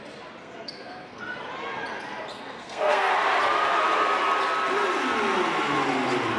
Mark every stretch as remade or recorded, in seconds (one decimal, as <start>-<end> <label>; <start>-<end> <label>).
0.0-0.4 recorded; 0.4-1.2 remade; 1.2-2.3 recorded; 2.3-3.1 remade; 3.1-6.4 recorded